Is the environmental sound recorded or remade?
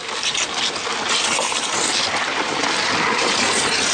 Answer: recorded